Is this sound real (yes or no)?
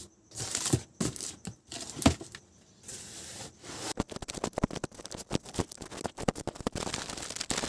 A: yes